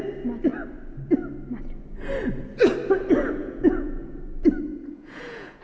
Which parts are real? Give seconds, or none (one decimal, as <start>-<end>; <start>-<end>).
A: 0.0-3.4; 4.2-4.7